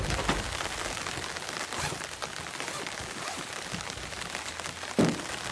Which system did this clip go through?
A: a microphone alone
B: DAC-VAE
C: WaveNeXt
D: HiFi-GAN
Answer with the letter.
A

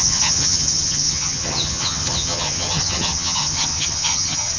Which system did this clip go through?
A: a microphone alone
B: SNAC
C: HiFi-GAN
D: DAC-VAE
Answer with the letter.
C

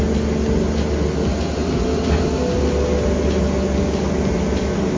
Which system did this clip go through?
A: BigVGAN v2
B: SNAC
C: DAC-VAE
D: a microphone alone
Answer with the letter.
D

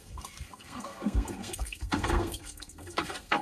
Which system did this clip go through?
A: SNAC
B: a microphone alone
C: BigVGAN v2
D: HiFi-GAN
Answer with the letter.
A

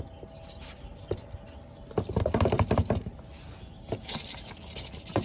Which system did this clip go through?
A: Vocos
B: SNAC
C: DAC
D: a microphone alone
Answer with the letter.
D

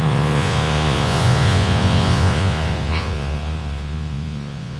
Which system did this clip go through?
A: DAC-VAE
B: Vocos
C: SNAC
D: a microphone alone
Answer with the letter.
B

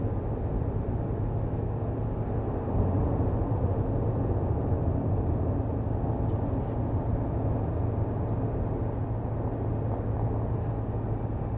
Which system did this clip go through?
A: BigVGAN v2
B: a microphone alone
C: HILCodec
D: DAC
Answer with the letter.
B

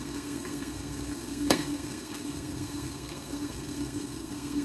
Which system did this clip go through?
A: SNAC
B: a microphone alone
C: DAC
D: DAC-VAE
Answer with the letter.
A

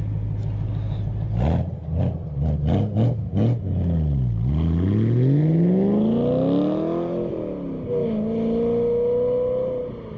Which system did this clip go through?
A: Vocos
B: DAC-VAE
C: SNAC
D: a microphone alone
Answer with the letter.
D